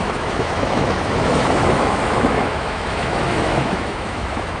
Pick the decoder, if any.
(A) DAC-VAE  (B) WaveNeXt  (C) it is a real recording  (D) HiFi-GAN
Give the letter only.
A